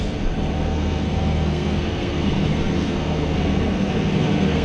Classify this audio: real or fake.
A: fake